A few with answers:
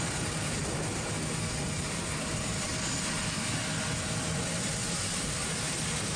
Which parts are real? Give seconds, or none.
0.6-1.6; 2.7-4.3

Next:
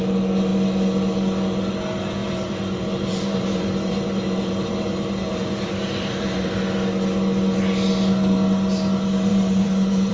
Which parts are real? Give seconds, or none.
0.0-2.2; 6.6-9.3

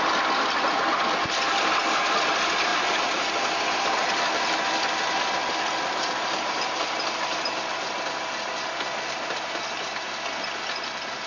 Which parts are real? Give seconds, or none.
0.0-2.7; 3.3-11.3